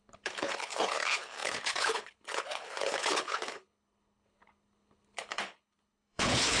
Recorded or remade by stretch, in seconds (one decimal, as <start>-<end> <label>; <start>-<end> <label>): 0.0-6.6 remade